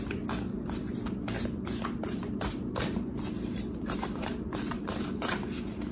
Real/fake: fake